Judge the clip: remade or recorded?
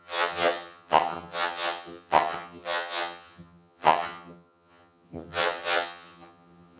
remade